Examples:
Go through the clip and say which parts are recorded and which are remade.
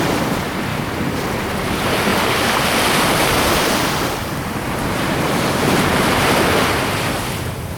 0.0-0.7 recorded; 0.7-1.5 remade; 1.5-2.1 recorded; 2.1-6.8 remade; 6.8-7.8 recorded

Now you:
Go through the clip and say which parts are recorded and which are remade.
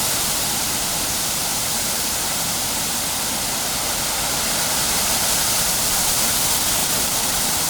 0.0-1.5 recorded; 1.5-2.8 remade; 2.8-6.8 recorded; 6.8-7.7 remade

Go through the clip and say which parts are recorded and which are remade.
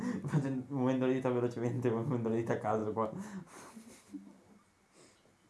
0.0-2.8 recorded; 2.8-5.5 remade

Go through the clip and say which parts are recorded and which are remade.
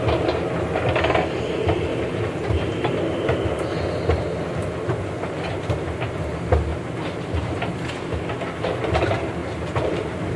0.0-1.9 recorded; 1.9-2.9 remade; 2.9-6.7 recorded; 6.7-7.6 remade; 7.6-9.4 recorded; 9.4-10.4 remade